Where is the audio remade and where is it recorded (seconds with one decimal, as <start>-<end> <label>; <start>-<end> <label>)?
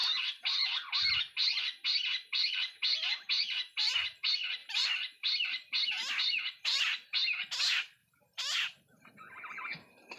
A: 0.0-4.6 recorded; 4.6-5.9 remade; 5.9-8.0 recorded; 8.0-9.1 remade; 9.1-10.2 recorded